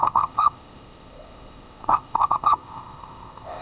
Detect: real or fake fake